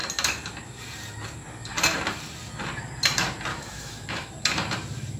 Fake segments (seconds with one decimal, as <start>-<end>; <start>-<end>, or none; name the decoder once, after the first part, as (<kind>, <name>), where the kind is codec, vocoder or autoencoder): 3.5-4.3 (autoencoder, DAC-VAE)